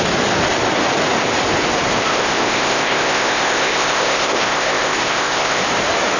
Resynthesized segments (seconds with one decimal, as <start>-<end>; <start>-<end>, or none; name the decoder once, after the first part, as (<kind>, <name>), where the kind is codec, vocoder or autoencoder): 1.9-5.6 (codec, ZipCodec)